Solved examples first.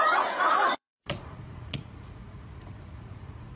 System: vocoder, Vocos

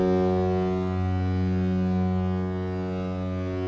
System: none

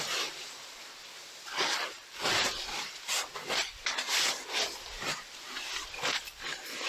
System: none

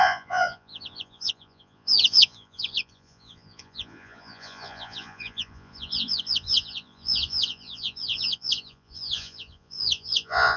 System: vocoder, Vocos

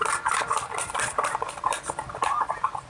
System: none